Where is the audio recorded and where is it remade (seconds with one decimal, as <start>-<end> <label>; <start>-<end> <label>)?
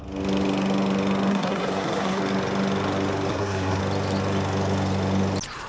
0.0-1.3 recorded; 1.3-2.2 remade; 2.2-3.3 recorded; 3.3-3.8 remade; 3.8-5.7 recorded